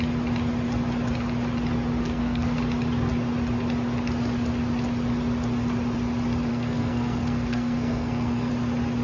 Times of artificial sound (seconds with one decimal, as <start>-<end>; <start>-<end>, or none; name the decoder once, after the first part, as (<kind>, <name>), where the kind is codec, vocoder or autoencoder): 2.0-2.6 (codec, SNAC); 6.5-8.5